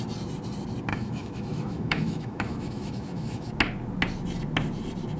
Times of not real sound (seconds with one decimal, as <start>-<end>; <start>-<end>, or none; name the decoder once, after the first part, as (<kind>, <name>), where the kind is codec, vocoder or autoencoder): 0.9-3.5 (autoencoder, DAC-VAE)